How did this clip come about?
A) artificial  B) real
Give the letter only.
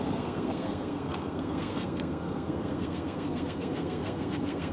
A